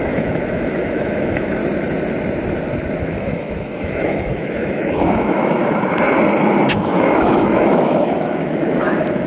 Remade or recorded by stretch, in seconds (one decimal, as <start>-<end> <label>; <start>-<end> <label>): 0.0-1.6 remade; 1.6-3.0 recorded; 3.0-5.6 remade; 5.6-6.7 recorded; 6.7-9.3 remade